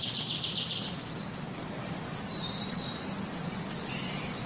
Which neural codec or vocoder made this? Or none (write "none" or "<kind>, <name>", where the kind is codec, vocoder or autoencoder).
none